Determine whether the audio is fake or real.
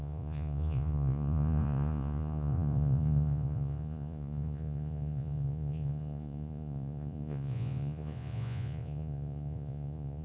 fake